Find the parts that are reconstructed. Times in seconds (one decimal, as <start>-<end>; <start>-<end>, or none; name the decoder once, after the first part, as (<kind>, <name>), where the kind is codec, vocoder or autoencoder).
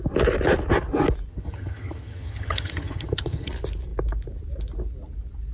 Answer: 1.3-3.5 (vocoder, HiFi-GAN)